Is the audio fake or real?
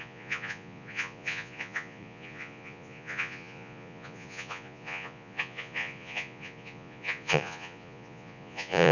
fake